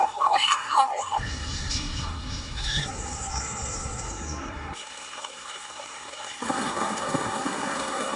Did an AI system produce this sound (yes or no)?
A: yes